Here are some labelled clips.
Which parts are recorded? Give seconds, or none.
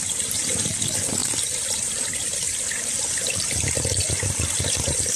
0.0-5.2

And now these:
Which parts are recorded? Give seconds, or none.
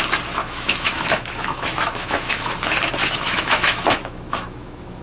0.0-0.4; 2.5-3.0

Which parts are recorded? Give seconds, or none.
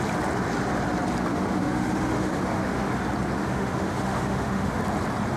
0.0-1.3; 2.9-3.4; 4.8-5.4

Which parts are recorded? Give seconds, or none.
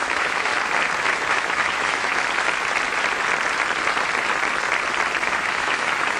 0.5-1.3; 2.1-5.2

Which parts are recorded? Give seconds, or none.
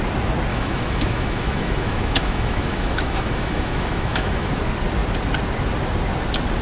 0.0-0.5; 4.5-6.6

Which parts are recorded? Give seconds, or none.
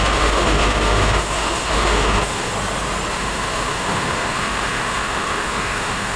2.5-3.1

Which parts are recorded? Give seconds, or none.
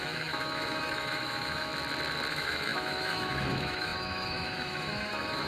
1.7-2.3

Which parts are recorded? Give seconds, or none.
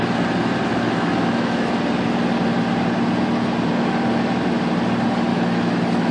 0.0-0.7; 1.7-5.3